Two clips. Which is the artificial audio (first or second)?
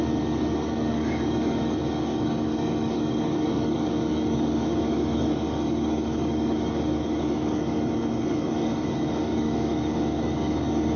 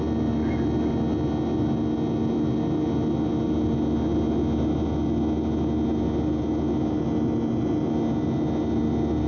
first